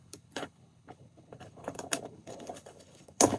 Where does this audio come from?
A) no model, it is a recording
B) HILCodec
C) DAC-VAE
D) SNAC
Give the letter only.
B